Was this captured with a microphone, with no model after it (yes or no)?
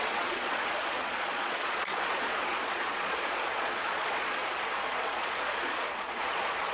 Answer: no